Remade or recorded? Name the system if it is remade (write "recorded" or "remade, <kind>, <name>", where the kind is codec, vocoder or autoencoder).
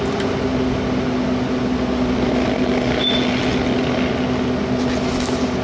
recorded